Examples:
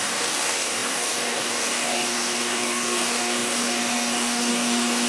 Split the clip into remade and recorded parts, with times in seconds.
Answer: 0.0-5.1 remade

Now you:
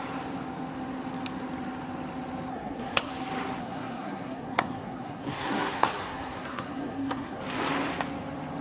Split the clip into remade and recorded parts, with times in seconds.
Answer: 0.0-2.5 recorded; 2.5-3.1 remade; 3.1-3.6 recorded; 3.6-7.4 remade; 7.4-8.6 recorded

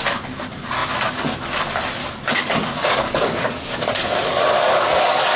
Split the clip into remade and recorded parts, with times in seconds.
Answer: 0.0-2.0 recorded; 2.0-5.4 remade

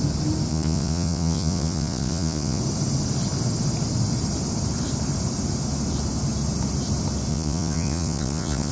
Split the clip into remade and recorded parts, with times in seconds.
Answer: 0.0-0.5 recorded; 0.5-2.6 remade; 2.6-7.3 recorded; 7.3-8.7 remade